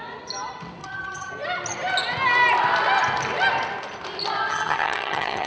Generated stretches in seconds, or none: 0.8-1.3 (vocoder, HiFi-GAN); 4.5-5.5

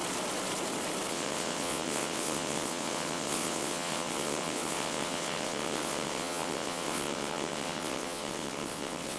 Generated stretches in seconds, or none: 1.1-9.2 (vocoder, WaveNeXt)